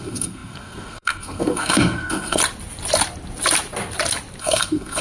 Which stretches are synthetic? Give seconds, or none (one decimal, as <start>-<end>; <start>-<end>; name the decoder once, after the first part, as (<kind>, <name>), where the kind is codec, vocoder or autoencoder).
0.0-2.4 (codec, SNAC); 4.4-5.0